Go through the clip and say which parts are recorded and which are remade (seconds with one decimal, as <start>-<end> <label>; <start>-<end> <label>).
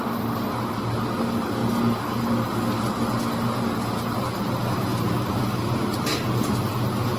0.0-7.2 recorded